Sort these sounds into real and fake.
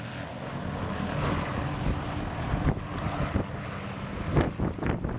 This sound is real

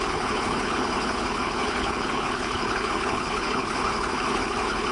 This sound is fake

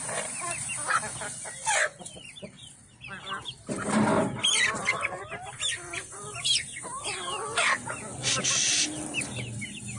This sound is real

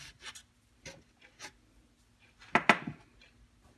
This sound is real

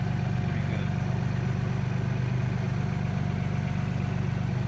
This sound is real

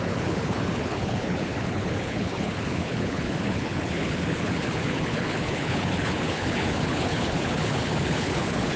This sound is fake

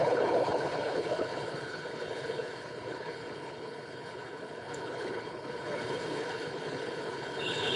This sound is fake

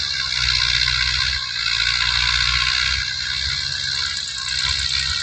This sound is real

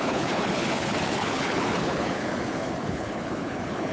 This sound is fake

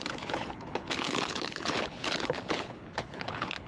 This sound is fake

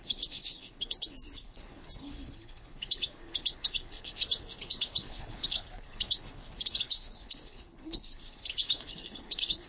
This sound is fake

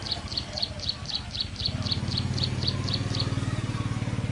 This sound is real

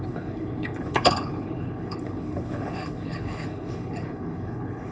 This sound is fake